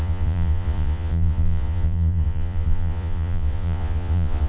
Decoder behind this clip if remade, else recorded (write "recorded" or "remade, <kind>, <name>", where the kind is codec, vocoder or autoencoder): remade, vocoder, Vocos